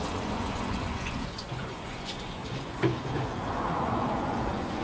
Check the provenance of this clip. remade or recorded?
remade